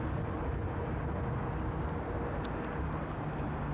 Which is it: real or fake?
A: real